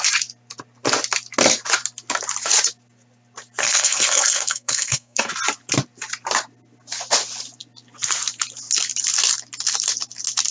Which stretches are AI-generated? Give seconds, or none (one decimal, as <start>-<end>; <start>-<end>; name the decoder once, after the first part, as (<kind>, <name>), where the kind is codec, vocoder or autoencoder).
3.6-5.3 (codec, SNAC)